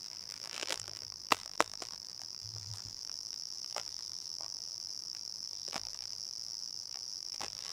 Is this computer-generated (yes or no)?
yes